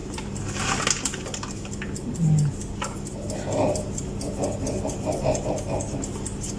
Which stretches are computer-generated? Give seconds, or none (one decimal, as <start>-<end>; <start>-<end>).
none

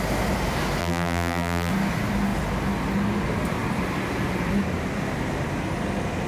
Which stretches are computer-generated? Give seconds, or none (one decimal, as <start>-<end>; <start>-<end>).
0.8-1.7

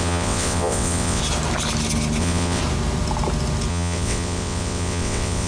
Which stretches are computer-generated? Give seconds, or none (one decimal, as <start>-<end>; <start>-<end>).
0.0-1.2; 2.2-2.6; 3.7-5.5

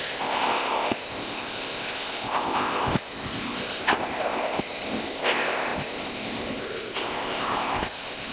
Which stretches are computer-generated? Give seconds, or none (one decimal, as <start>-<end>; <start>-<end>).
0.0-8.3

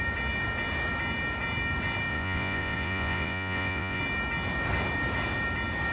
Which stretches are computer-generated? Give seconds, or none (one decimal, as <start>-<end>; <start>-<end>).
2.1-4.0

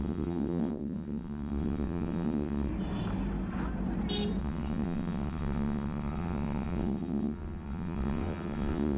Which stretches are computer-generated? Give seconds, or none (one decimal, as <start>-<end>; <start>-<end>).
0.0-2.7; 4.4-9.0